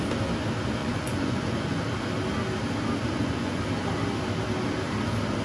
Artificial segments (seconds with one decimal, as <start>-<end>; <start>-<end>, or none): 0.8-1.8; 3.1-3.6